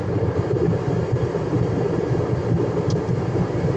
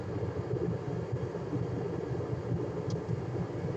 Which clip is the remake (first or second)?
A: first